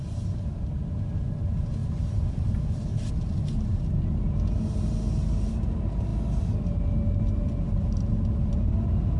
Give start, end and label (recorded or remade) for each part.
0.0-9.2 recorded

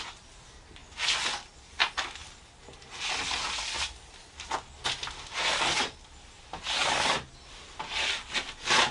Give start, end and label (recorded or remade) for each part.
0.0-8.9 recorded

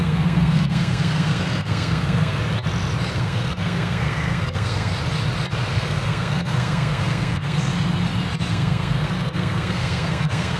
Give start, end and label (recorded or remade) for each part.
0.0-2.4 remade; 2.4-3.1 recorded; 3.1-4.9 remade; 4.9-5.7 recorded; 5.7-7.7 remade; 7.7-8.5 recorded; 8.5-10.6 remade

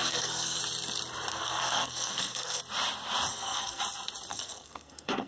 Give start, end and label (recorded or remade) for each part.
0.0-0.6 remade; 0.6-1.3 recorded; 1.3-2.6 remade; 2.6-3.3 recorded; 3.3-3.8 remade; 3.8-4.3 recorded; 4.3-5.3 remade

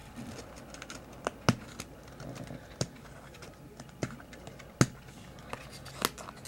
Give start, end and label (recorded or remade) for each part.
0.0-6.5 recorded